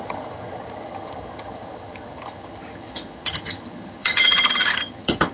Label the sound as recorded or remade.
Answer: remade